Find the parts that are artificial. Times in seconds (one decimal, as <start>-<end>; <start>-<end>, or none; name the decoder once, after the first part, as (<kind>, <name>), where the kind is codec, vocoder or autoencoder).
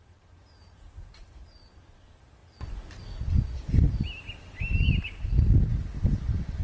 none